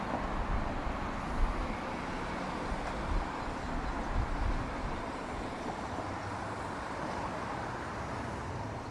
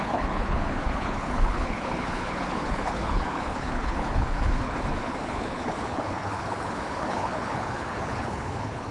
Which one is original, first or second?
first